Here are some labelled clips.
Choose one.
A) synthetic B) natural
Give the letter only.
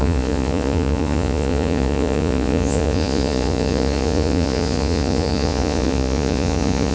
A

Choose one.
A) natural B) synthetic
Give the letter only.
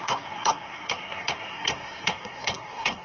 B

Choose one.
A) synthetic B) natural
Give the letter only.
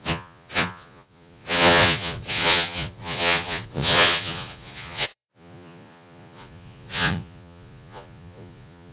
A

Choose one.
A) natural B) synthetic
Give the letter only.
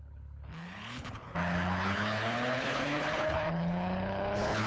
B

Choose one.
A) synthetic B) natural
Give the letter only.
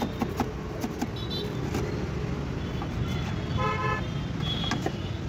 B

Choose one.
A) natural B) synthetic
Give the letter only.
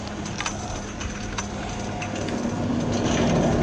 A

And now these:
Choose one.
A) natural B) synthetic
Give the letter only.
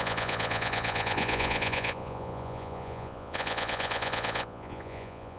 B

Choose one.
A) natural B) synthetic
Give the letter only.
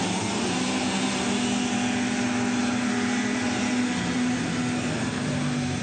A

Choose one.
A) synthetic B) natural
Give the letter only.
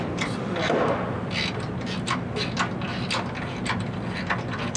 B